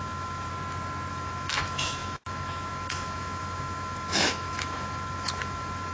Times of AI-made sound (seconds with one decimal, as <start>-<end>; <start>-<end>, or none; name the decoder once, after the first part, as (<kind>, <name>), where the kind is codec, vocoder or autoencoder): 0.0-0.5 (autoencoder, DAC-VAE); 1.1-5.9